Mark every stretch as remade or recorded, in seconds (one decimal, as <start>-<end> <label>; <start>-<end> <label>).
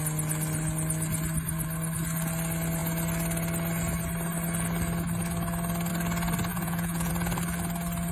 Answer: 0.0-6.5 recorded; 6.5-7.1 remade; 7.1-8.1 recorded